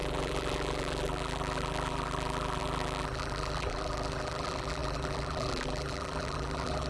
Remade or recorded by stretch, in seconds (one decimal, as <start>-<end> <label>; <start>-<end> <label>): 0.0-6.9 remade